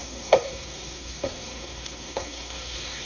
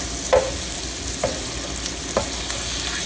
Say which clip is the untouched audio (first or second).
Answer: second